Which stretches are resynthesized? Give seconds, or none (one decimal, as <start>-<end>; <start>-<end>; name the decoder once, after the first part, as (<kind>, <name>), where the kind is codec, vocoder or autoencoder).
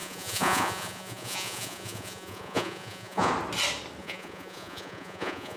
0.0-3.3 (vocoder, Vocos); 4.0-5.6